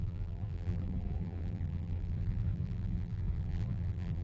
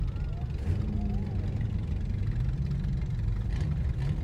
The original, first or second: second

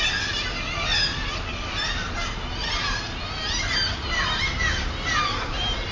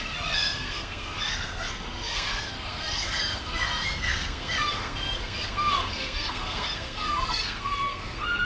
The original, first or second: first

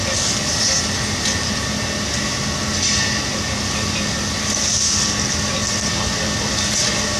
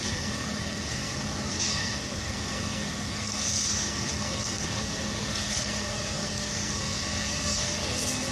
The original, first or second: first